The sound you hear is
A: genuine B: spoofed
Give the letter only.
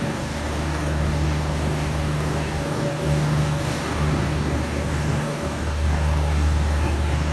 B